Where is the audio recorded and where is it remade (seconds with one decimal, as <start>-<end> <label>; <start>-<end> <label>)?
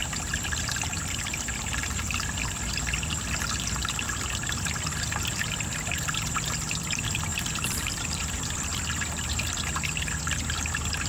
0.0-2.5 remade; 2.5-7.3 recorded; 7.3-9.5 remade; 9.5-11.1 recorded